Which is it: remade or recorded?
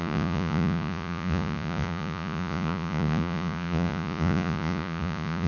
remade